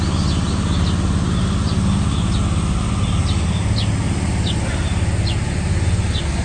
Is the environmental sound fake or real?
real